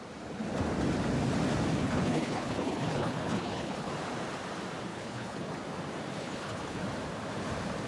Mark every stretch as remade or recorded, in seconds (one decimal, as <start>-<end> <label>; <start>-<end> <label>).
0.0-1.8 recorded; 1.8-3.9 remade; 3.9-4.9 recorded; 4.9-5.4 remade; 5.4-6.2 recorded; 6.2-6.8 remade; 6.8-7.9 recorded